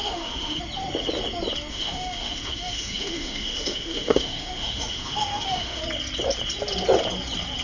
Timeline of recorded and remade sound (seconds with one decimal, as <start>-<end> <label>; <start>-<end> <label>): 0.0-0.6 remade; 0.6-1.7 recorded; 1.7-5.8 remade; 5.8-7.6 recorded